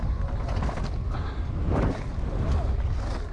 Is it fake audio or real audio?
real